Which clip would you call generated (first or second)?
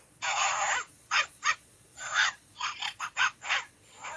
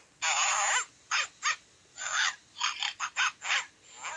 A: first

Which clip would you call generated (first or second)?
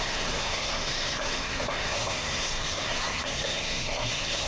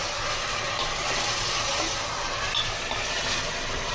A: first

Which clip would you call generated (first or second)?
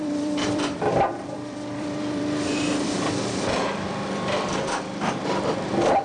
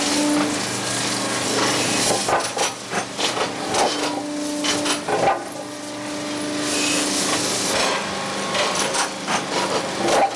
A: first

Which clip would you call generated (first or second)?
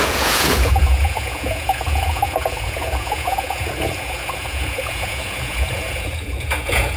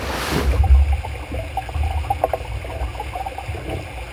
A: first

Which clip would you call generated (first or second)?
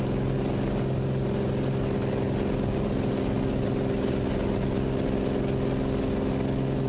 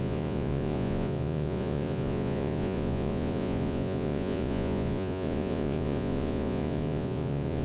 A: second